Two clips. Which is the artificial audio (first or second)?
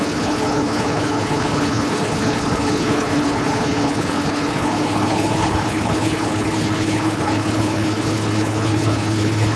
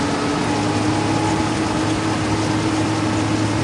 first